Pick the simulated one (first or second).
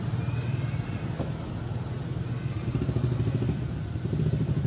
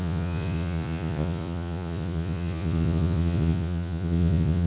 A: second